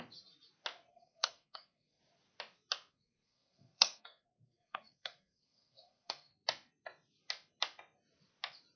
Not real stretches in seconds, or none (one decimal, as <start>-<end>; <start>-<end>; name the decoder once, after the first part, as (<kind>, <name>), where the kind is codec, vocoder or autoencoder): 0.9-2.0 (codec, SNAC); 2.9-6.3